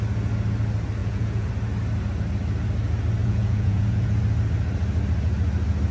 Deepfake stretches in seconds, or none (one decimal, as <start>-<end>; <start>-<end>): 1.0-1.5; 3.2-4.2